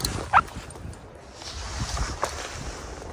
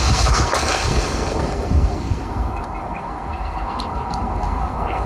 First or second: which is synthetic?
second